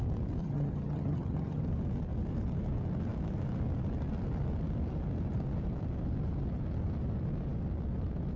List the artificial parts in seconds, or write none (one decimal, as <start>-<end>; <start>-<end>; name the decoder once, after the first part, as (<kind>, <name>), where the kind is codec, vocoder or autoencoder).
0.4-1.6 (vocoder, HiFi-GAN)

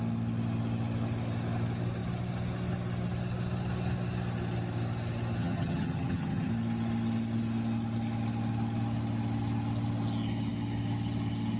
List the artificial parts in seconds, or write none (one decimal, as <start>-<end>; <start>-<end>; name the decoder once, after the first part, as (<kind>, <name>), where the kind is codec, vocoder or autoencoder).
5.4-6.5 (vocoder, HiFi-GAN)

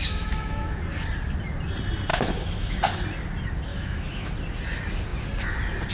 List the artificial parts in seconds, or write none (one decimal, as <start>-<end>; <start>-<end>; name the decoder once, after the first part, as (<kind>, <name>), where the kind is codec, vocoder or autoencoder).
0.0-0.8 (autoencoder, DAC-VAE); 2.1-2.8; 3.7-4.3

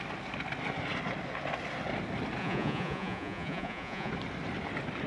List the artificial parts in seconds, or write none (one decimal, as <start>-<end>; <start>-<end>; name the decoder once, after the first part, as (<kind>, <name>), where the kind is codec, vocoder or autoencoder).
2.4-4.1 (vocoder, Vocos)